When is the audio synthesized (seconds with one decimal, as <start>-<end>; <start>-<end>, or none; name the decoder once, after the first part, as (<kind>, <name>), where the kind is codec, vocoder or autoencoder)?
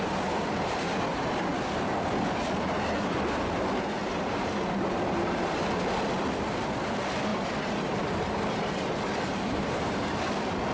4.0-5.7 (vocoder, BigVGAN v2); 7.3-10.0